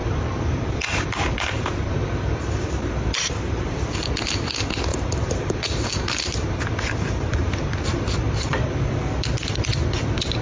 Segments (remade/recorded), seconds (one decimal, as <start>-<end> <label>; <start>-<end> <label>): 0.0-3.9 remade; 3.9-4.9 recorded; 4.9-6.6 remade; 6.6-7.3 recorded; 7.3-8.2 remade; 8.2-10.4 recorded